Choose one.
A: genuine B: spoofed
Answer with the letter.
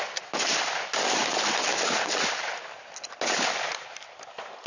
A